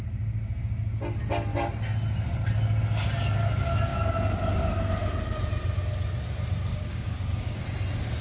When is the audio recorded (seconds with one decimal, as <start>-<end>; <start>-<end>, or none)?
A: 0.0-6.7; 7.6-8.2